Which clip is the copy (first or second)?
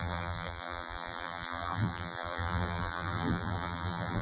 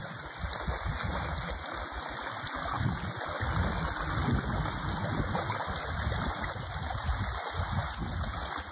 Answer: first